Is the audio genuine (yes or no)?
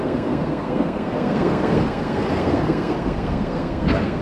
no